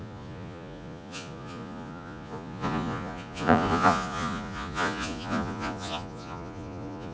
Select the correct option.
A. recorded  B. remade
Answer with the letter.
B